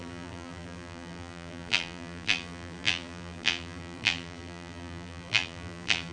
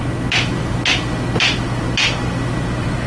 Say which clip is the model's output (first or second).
first